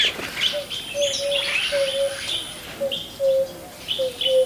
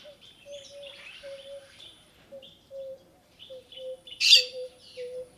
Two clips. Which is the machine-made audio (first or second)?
second